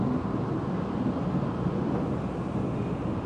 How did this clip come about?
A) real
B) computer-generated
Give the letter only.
A